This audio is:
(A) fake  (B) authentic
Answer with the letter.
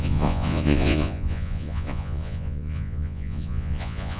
A